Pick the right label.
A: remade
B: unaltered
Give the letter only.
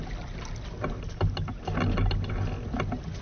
B